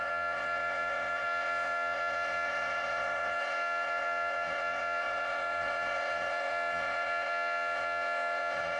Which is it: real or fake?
fake